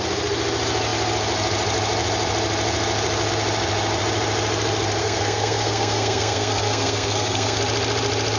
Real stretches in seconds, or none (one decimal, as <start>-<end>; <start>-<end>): 0.0-5.0; 7.6-8.4